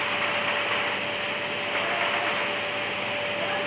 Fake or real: real